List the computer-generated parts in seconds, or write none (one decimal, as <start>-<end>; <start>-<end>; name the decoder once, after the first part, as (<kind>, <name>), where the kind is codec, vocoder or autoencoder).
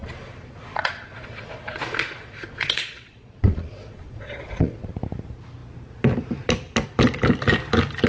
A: 0.0-4.9 (vocoder, Vocos)